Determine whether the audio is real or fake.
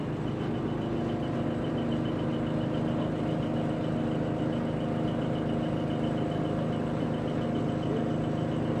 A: real